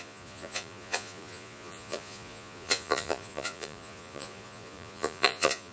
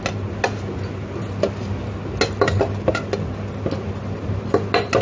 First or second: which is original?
second